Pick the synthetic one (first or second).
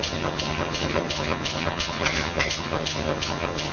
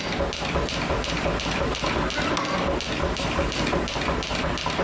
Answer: first